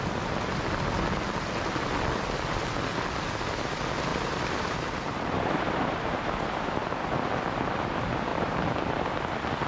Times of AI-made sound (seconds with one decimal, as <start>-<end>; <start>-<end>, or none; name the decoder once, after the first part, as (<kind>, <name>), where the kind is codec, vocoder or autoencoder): 4.1-6.0 (vocoder, BigVGAN v2); 8.3-9.1